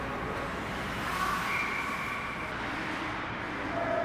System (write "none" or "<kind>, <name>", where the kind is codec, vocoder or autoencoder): none